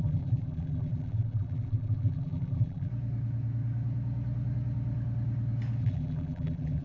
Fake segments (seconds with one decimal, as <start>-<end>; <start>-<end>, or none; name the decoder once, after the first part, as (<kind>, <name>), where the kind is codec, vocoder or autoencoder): 0.0-2.9 (vocoder, BigVGAN v2); 5.8-6.8